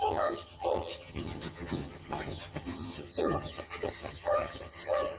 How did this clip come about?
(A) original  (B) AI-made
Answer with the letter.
B